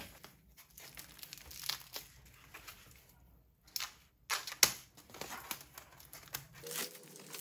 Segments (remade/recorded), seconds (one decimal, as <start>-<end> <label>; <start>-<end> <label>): 0.0-7.4 recorded